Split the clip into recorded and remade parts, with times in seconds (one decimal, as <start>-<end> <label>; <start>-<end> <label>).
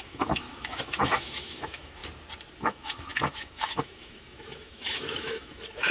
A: 0.0-2.0 remade; 2.0-2.6 recorded; 2.6-5.9 remade